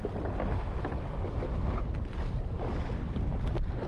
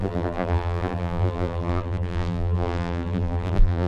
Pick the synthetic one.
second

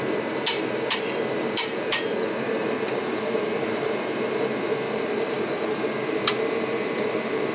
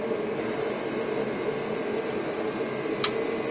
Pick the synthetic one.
first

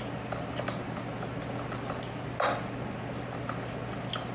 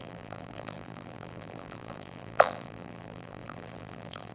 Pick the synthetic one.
second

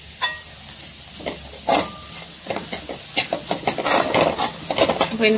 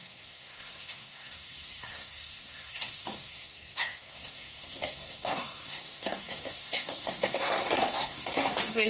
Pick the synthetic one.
second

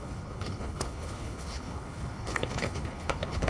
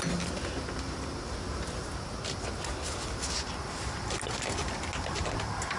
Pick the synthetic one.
first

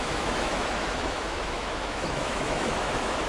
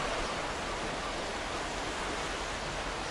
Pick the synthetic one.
first